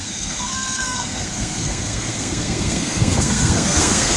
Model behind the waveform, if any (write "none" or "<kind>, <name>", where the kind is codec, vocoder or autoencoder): codec, SNAC